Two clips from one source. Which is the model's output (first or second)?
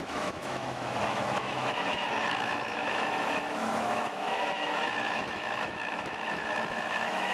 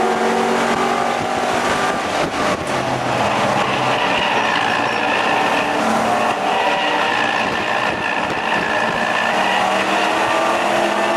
first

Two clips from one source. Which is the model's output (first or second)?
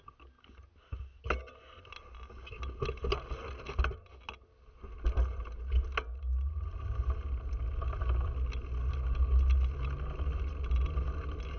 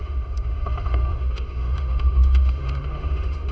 second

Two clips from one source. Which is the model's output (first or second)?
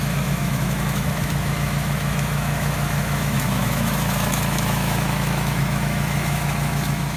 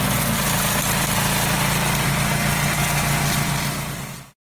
first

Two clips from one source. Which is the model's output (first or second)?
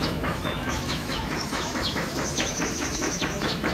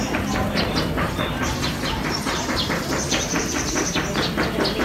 first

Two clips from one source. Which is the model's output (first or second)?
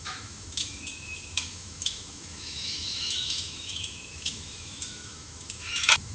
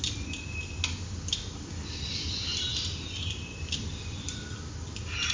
first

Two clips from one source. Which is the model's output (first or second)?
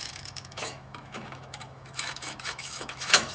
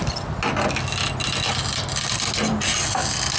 first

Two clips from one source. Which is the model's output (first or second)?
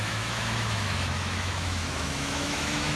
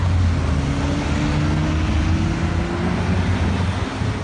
first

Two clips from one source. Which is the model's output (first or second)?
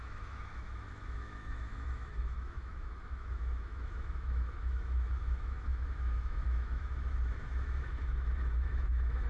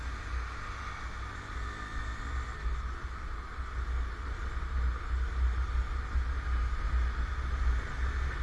first